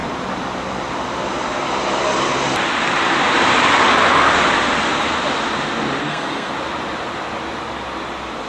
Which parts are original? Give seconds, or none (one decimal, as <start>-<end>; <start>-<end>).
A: 0.0-6.0; 6.5-8.5